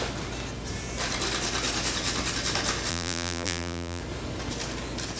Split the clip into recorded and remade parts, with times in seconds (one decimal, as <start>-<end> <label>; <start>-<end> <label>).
0.0-2.9 recorded; 2.9-4.0 remade; 4.0-5.2 recorded